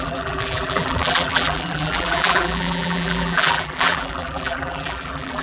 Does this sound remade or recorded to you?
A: remade